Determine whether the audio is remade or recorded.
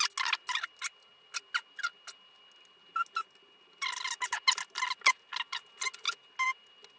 recorded